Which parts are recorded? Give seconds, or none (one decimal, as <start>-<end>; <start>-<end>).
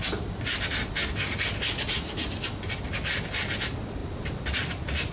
0.0-5.1